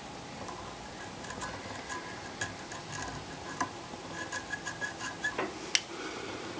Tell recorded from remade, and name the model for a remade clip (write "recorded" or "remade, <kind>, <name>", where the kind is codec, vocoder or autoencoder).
recorded